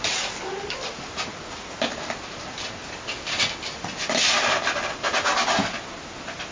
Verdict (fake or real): real